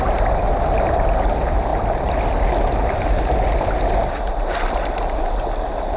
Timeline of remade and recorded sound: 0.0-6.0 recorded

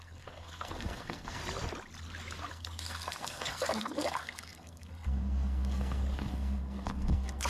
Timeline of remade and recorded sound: 0.0-1.4 remade; 1.4-2.5 recorded; 2.5-7.5 remade